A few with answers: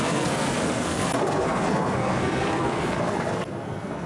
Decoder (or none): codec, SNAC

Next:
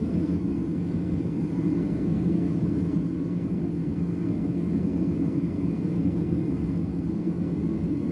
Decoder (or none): codec, SNAC